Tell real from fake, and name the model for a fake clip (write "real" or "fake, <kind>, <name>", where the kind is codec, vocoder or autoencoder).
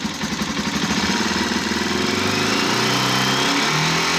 real